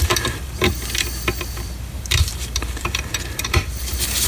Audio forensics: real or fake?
fake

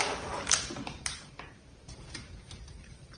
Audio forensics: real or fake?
fake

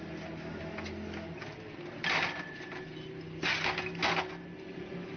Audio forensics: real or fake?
real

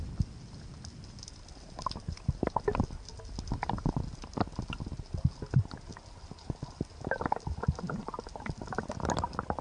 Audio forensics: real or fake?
real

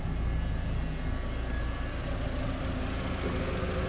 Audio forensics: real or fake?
real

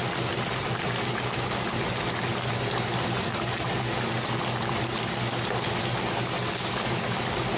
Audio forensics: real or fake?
real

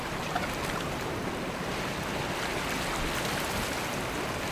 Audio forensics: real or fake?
real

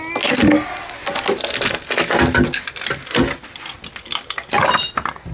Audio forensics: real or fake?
real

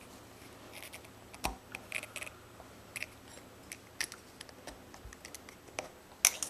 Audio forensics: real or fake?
real